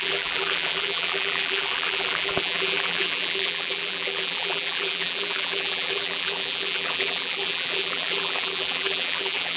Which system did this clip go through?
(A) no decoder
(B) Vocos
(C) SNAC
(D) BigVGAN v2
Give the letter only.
D